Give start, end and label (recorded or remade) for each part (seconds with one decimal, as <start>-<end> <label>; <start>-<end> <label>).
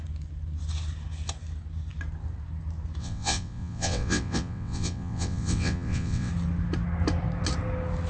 0.0-3.0 recorded; 3.0-6.3 remade; 6.3-8.1 recorded